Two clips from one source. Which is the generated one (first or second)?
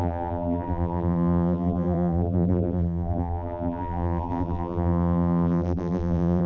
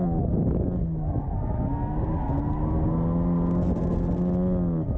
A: first